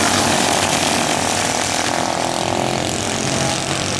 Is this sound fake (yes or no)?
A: no